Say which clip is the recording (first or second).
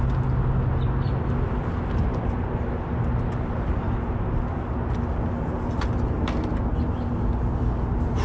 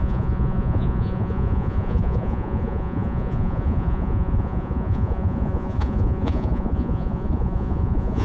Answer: first